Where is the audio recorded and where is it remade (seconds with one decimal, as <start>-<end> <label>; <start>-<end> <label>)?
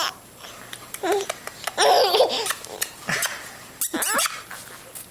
0.0-5.1 recorded